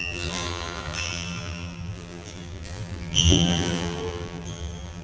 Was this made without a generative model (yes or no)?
no